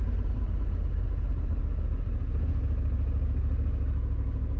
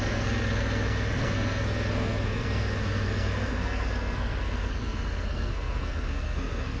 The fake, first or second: second